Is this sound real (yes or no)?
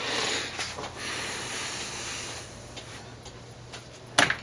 yes